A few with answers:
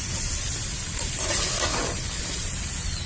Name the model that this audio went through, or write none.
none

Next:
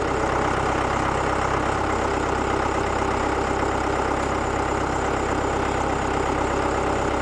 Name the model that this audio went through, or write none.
none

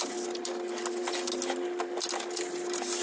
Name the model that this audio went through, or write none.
none